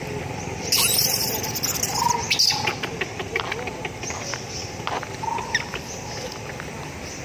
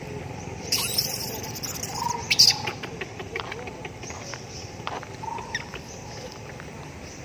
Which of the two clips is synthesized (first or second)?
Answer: second